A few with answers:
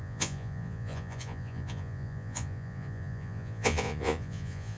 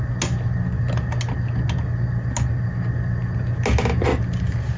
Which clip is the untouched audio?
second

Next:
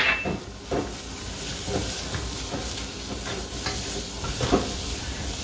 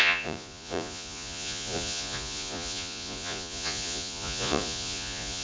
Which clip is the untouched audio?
first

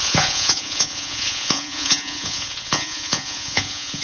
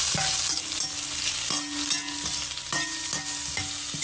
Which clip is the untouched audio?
second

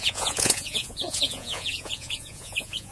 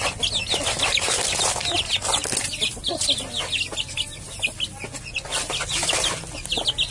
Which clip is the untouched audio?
second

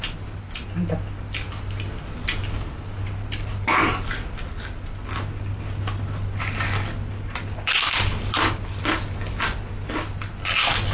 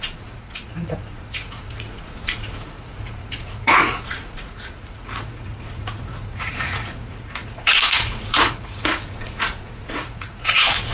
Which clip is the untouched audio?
first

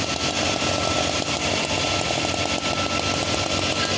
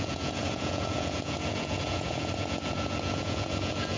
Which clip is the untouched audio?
first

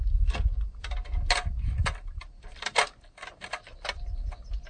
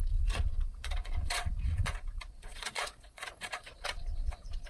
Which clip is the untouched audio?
first